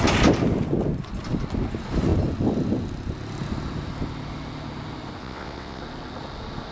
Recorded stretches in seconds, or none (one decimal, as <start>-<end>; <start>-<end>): 0.0-5.2; 5.8-6.7